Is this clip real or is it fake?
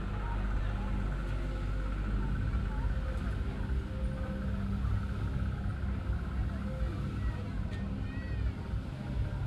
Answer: real